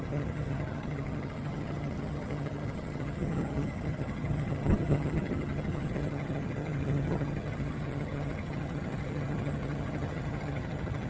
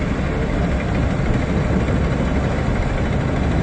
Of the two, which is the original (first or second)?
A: second